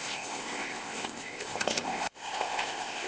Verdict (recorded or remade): remade